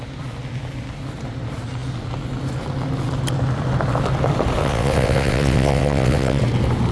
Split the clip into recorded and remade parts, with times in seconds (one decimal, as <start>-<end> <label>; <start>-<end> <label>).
0.0-4.6 recorded; 4.6-6.4 remade; 6.4-6.9 recorded